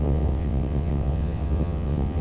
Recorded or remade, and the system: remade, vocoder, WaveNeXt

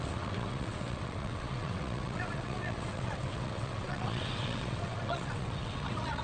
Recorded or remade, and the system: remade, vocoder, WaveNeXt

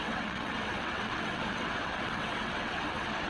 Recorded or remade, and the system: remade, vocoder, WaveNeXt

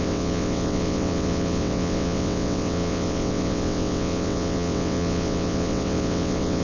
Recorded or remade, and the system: remade, vocoder, WaveNeXt